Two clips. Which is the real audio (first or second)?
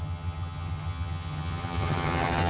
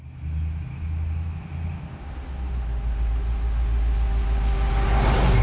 second